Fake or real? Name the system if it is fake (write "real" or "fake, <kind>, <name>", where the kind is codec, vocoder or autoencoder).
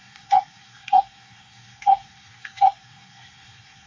fake, codec, SNAC